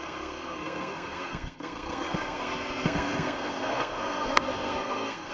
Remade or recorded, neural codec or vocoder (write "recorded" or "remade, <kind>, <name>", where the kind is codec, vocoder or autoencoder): remade, codec, SNAC